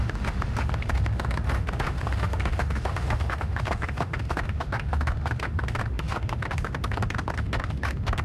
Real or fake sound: fake